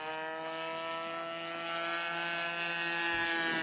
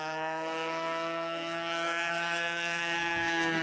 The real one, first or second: first